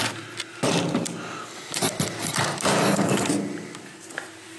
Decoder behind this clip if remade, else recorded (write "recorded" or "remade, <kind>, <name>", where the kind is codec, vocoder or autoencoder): recorded